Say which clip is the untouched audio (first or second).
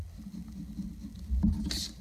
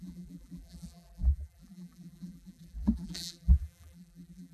first